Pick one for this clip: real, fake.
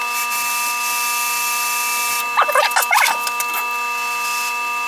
real